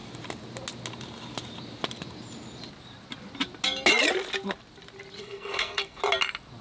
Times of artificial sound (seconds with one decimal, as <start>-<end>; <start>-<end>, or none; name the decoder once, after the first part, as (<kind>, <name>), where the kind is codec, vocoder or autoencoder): 5.2-6.0 (codec, SNAC)